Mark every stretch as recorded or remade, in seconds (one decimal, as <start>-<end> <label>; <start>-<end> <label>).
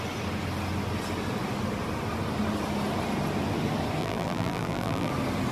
0.0-4.0 recorded; 4.0-5.1 remade; 5.1-5.5 recorded